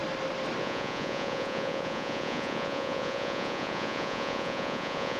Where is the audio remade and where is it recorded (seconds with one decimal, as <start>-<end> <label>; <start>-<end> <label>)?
0.0-0.6 recorded; 0.6-5.2 remade